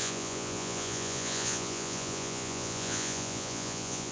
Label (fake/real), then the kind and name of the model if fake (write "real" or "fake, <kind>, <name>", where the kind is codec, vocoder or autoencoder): fake, vocoder, Vocos